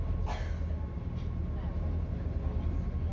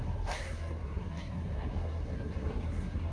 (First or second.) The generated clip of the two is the second